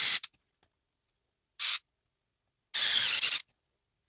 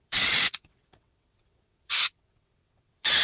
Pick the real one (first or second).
first